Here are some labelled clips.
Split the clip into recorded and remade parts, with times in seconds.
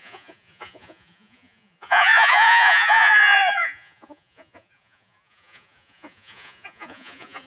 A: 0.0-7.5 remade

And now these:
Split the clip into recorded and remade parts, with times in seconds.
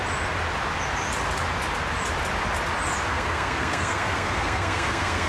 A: 0.0-3.1 recorded; 3.1-5.3 remade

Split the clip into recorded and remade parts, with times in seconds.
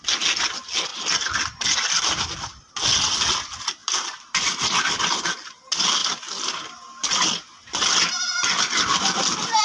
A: 0.0-3.8 recorded; 3.8-5.1 remade; 5.1-9.6 recorded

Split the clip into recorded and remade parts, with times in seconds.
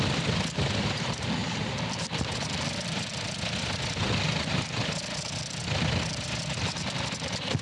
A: 0.0-7.6 recorded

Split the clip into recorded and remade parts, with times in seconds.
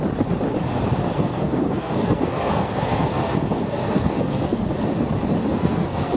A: 0.0-1.0 recorded; 1.0-4.7 remade; 4.7-5.4 recorded; 5.4-6.2 remade